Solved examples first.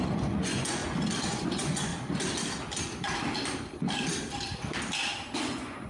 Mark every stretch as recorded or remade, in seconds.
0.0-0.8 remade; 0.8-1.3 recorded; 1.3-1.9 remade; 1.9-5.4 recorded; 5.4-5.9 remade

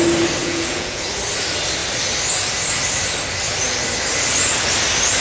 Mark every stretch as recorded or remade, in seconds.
0.0-0.4 recorded; 0.4-1.0 remade; 1.0-5.2 recorded

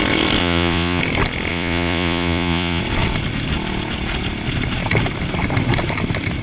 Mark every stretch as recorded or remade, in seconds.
0.0-0.4 recorded; 0.4-1.0 remade; 1.0-1.5 recorded; 1.5-2.8 remade; 2.8-6.4 recorded

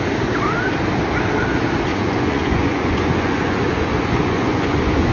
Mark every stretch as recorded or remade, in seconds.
0.0-1.9 recorded; 1.9-5.1 remade

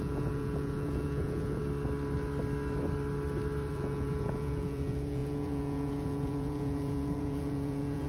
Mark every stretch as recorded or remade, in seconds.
0.0-1.6 remade; 1.6-3.7 recorded; 3.7-8.1 remade